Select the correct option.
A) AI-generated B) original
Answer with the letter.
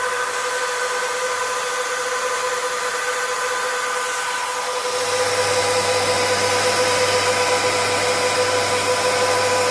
B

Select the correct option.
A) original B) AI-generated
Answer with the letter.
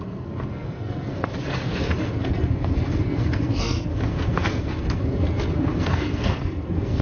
B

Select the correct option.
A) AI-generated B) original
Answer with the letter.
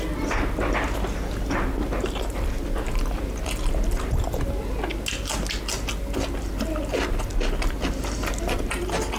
B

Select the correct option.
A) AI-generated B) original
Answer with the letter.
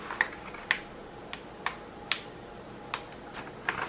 B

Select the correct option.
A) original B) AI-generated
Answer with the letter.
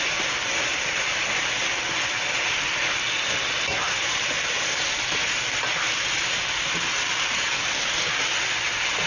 A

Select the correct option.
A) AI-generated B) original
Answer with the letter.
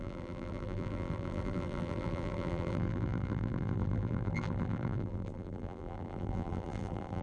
A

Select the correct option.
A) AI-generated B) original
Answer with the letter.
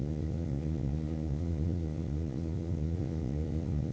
A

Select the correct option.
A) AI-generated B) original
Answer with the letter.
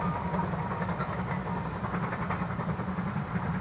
B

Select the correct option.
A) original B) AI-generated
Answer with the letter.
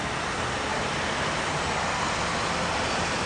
A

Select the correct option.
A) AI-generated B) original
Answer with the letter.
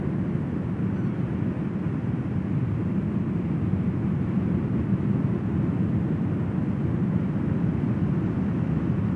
B